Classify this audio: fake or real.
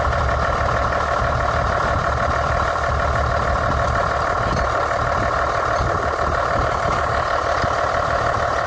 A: real